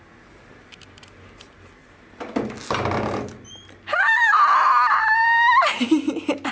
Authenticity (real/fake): real